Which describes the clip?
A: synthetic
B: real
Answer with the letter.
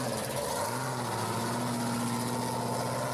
B